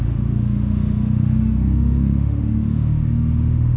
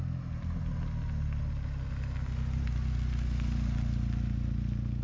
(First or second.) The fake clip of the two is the first